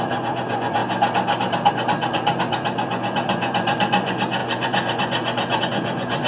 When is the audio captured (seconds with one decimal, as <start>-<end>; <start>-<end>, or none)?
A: 0.8-1.7